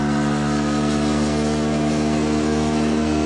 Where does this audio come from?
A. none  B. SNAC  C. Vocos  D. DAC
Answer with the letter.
B